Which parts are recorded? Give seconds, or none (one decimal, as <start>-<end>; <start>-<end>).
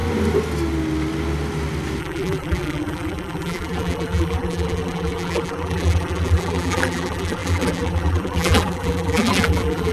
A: 0.0-2.0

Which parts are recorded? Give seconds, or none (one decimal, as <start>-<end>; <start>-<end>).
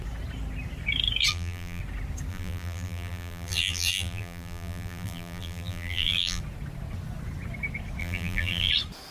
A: 0.0-1.3; 1.8-2.3; 6.4-8.0; 8.7-9.1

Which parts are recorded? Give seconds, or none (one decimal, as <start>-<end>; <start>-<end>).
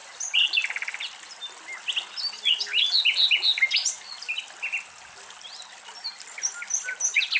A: 0.0-7.4